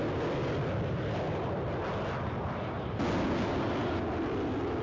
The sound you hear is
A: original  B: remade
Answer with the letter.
A